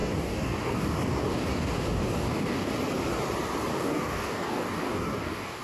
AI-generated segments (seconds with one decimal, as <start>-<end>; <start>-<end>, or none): 0.0-2.7; 3.7-5.6